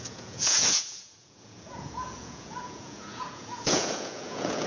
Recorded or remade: remade